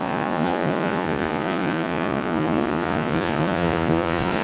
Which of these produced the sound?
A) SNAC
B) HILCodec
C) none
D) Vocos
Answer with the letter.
D